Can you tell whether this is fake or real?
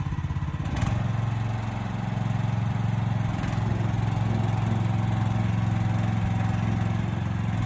real